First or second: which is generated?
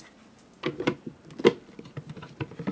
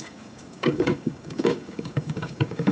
second